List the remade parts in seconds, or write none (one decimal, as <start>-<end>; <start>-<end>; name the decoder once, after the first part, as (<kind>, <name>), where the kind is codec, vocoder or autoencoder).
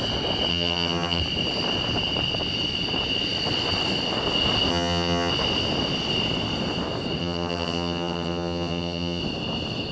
0.5-1.2 (vocoder, HiFi-GAN); 4.7-5.3; 7.2-9.2